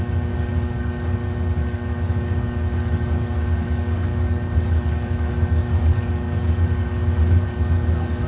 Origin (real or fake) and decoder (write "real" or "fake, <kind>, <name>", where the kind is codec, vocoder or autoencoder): fake, codec, DAC